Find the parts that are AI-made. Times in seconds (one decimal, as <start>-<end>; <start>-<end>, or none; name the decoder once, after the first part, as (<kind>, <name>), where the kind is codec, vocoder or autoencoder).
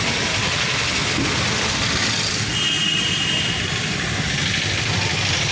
none